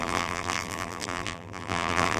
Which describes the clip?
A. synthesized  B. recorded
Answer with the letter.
A